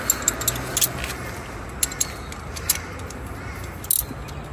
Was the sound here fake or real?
real